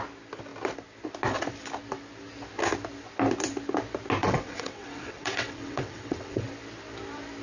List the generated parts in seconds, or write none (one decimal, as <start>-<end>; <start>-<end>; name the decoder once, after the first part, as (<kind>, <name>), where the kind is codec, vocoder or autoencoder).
4.2-6.5 (vocoder, WaveNeXt)